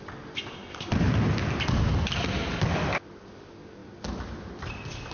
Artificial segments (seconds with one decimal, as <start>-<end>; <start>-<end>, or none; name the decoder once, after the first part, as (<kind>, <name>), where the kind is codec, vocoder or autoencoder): none